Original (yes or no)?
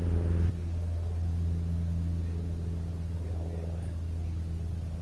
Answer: yes